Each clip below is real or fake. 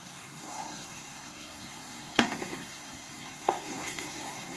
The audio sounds fake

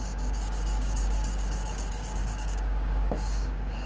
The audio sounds fake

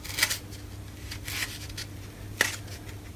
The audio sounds real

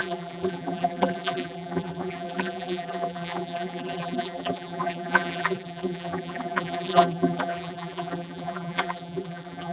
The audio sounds fake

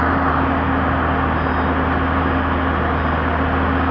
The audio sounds real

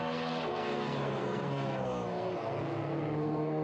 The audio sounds fake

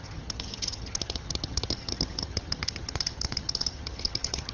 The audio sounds fake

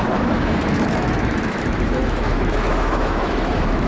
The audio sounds fake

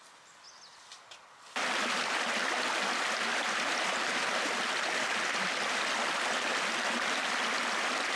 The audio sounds real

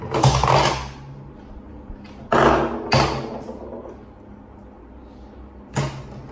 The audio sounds real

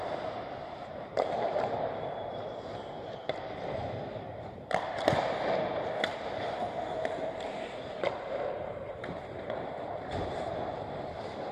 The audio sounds fake